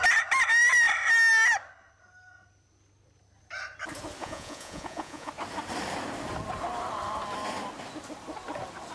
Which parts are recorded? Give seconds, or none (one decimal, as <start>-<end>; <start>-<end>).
0.0-4.2; 5.3-8.9